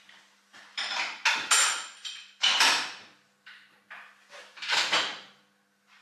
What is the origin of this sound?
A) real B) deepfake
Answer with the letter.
A